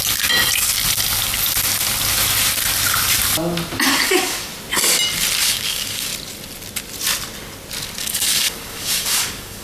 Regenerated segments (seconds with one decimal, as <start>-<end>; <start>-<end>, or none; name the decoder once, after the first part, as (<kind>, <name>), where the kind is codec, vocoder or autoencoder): 3.9-4.5 (codec, DAC); 5.4-6.1; 8.0-9.6